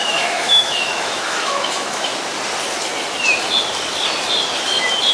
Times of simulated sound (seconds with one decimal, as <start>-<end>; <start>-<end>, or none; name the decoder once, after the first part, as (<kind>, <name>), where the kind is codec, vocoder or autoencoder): 0.0-2.1 (autoencoder, DAC-VAE)